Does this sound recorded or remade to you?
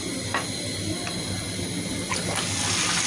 recorded